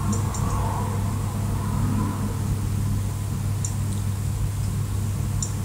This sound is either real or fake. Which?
real